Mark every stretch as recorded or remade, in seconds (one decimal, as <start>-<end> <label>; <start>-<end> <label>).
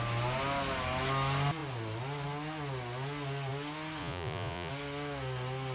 0.0-4.0 recorded; 4.0-4.7 remade; 4.7-5.7 recorded